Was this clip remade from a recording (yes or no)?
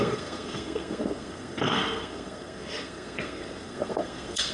yes